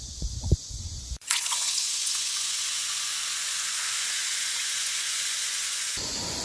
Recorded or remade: remade